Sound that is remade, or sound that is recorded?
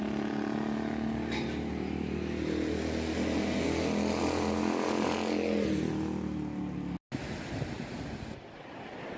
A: recorded